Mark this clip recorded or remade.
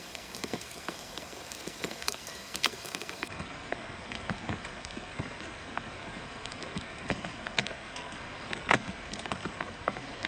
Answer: remade